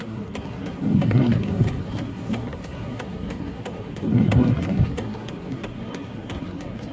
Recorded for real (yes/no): no